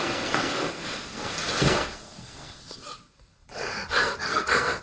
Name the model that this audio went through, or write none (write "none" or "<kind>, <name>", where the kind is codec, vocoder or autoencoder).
codec, SNAC